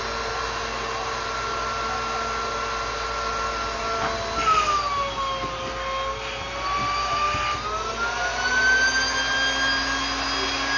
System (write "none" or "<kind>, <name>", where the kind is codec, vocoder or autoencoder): none